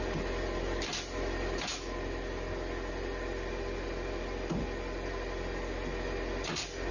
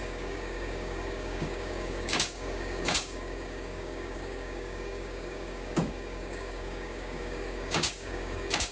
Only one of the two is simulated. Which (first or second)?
second